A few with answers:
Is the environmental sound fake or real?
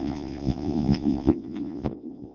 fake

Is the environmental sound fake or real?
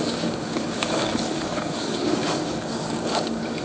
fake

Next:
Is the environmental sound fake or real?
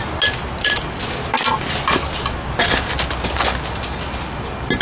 real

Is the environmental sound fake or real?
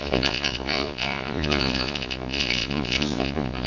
fake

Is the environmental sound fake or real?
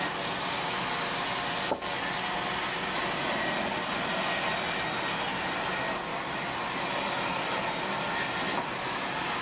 real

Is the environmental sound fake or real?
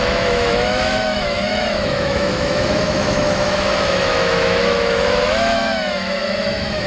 fake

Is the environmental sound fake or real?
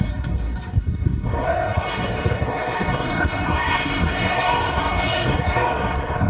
fake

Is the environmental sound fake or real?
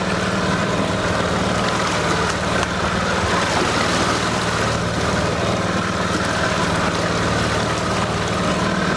real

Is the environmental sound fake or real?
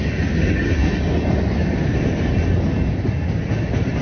real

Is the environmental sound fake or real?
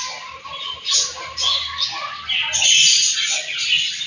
real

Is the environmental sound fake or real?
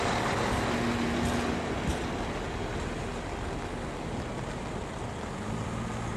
real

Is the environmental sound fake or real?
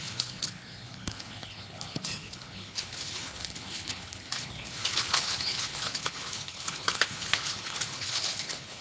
fake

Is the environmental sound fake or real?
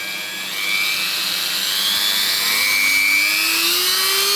real